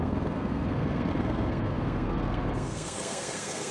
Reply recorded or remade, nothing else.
remade